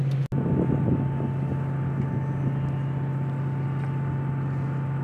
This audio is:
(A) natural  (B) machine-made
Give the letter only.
A